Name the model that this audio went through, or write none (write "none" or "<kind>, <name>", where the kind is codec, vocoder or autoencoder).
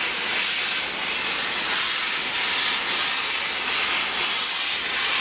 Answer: none